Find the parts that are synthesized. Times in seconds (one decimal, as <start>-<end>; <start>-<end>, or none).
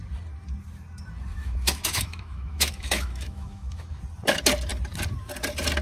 1.3-4.0